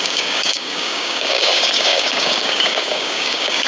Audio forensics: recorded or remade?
remade